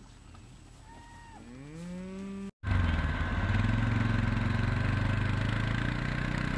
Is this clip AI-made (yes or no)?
no